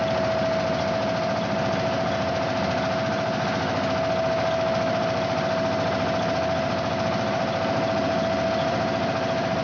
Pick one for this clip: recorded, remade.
recorded